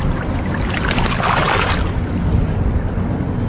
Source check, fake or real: real